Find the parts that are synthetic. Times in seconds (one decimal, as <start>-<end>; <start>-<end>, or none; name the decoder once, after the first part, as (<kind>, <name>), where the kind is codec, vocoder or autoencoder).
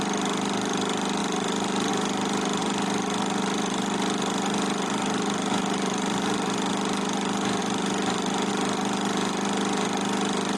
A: 1.2-1.9 (vocoder, BigVGAN v2); 2.6-6.7; 7.6-8.5